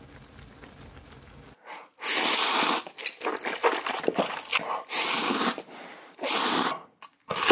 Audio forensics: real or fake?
real